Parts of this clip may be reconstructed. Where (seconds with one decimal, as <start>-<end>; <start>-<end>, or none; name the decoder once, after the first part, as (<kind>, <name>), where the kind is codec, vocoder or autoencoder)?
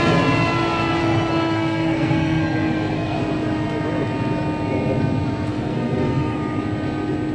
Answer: 1.0-3.2 (codec, SNAC); 5.5-6.4